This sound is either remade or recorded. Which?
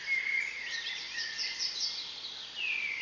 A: recorded